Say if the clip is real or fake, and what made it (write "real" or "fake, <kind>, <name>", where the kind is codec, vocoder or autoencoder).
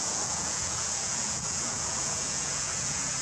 fake, vocoder, Vocos